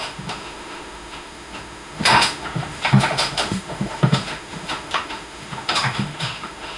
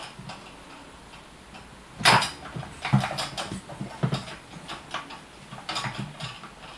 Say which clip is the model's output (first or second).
first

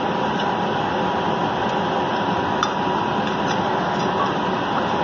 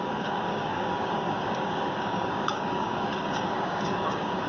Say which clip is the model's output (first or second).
second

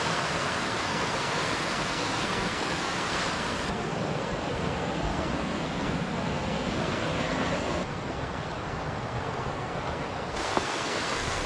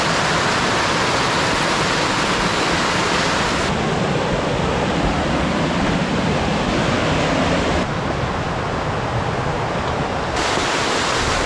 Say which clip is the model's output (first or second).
first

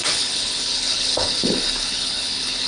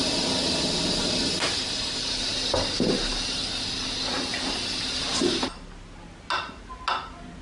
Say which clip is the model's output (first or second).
first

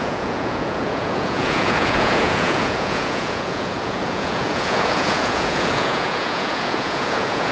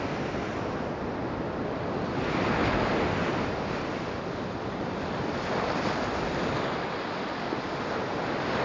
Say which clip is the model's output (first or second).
first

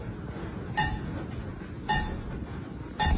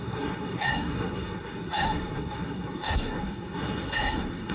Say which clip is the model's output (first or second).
second